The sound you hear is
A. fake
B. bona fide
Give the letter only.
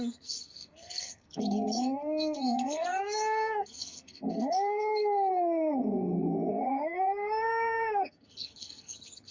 A